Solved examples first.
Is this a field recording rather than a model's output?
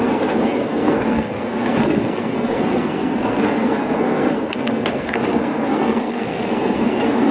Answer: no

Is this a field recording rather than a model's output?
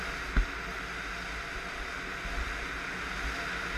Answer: yes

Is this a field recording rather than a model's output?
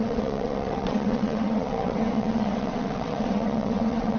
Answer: no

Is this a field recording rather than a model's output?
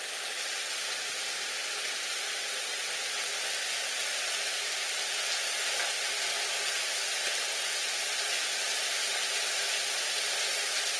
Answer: yes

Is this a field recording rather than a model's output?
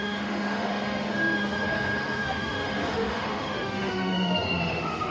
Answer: no